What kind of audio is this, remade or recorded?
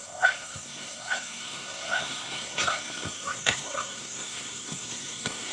remade